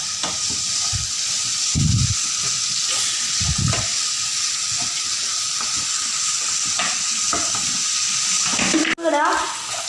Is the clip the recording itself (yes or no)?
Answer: yes